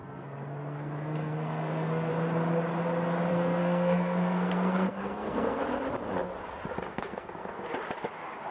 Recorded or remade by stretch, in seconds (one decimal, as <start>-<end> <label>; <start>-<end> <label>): 0.0-2.1 remade; 2.1-3.3 recorded; 3.3-5.6 remade; 5.6-6.9 recorded; 6.9-7.6 remade; 7.6-8.5 recorded